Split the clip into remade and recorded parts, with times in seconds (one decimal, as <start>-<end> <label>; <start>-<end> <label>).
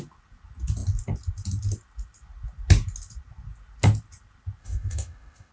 0.0-4.6 recorded; 4.6-5.5 remade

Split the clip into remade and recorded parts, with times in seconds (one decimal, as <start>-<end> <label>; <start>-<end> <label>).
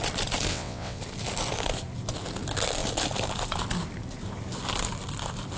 0.0-0.5 recorded; 0.5-1.0 remade; 1.0-5.6 recorded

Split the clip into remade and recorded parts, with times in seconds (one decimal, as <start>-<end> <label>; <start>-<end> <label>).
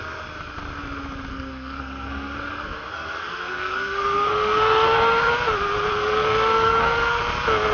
0.0-1.3 recorded; 1.3-5.3 remade; 5.3-5.9 recorded; 5.9-7.2 remade; 7.2-7.7 recorded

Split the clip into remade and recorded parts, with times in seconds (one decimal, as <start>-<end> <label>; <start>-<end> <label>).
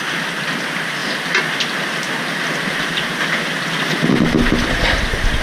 0.0-5.4 recorded